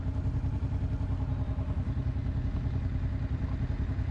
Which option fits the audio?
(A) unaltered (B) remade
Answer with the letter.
A